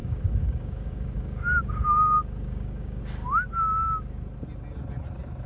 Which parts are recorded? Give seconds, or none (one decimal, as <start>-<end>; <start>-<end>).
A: 3.0-5.5